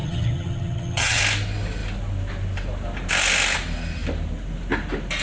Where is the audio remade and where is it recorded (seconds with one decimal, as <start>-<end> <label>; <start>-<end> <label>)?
0.0-1.2 remade; 1.2-5.2 recorded